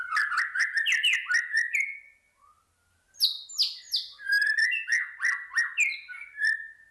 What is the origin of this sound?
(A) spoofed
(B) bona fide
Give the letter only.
B